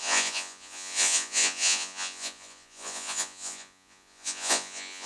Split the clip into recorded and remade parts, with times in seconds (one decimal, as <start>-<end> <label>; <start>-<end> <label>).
0.0-5.1 remade